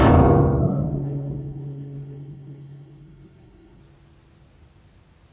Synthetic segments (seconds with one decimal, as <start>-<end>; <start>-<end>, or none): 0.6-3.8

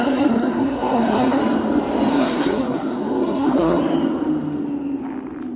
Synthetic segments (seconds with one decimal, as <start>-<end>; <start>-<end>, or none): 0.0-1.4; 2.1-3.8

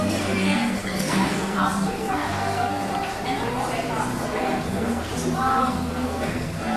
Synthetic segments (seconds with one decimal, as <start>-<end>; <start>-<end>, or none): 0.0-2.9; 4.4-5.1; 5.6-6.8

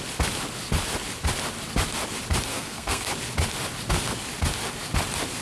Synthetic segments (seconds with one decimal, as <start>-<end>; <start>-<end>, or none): 2.5-3.1

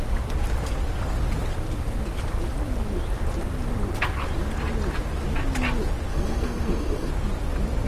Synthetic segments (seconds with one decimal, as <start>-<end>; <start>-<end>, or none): 6.1-7.1

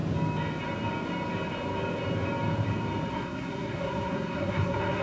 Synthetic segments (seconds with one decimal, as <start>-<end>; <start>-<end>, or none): 3.1-5.0